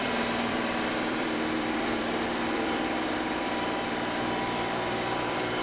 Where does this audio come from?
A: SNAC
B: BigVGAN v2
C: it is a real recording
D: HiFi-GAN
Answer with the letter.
B